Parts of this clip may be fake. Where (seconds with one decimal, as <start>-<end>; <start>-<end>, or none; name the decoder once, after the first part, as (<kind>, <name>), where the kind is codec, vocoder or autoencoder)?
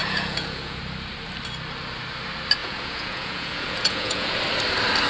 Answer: 0.0-0.8 (vocoder, Vocos); 2.6-4.4